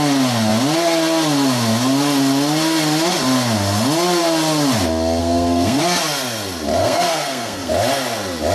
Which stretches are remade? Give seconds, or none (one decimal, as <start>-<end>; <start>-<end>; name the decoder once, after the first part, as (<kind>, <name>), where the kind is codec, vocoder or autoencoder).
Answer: 5.2-5.8 (codec, SNAC); 6.8-7.7